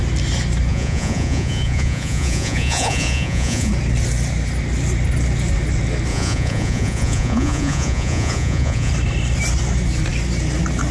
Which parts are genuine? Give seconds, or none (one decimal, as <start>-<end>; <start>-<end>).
0.0-0.7; 3.7-6.1; 8.9-10.9